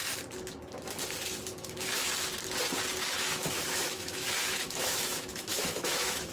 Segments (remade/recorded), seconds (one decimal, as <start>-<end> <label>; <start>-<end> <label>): 0.0-1.6 recorded; 1.6-2.1 remade; 2.1-3.2 recorded; 3.2-6.3 remade